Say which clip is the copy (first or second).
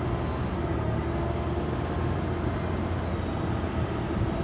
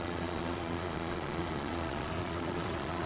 second